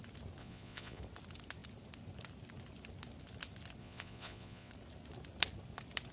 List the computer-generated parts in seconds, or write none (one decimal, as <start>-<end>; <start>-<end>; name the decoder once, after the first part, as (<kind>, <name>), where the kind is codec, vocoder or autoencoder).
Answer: 0.4-1.0 (vocoder, Vocos); 3.8-4.7